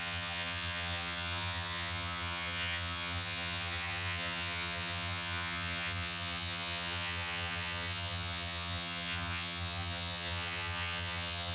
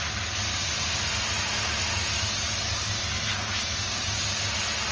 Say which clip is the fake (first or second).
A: first